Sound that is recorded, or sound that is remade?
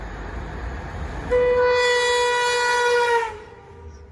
recorded